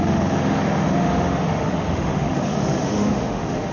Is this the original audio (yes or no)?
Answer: no